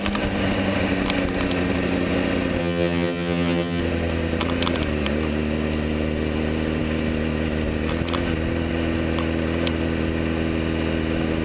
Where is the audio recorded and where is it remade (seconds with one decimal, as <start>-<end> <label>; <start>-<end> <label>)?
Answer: 0.0-2.6 recorded; 2.6-3.8 remade; 3.8-11.4 recorded